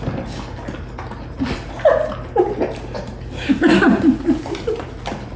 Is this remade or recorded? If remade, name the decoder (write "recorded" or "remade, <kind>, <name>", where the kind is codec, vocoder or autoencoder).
recorded